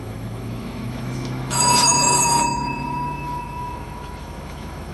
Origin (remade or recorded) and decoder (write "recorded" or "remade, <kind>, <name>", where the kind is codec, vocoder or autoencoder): remade, autoencoder, DAC-VAE